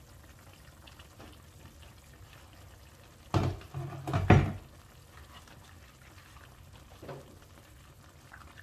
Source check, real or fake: real